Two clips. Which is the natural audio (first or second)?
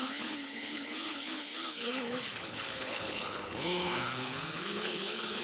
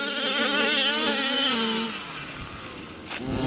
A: second